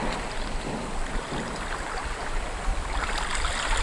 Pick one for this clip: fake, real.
real